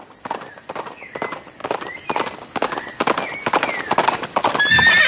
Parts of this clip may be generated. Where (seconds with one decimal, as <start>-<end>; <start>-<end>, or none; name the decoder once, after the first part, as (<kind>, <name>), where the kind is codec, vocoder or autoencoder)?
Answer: none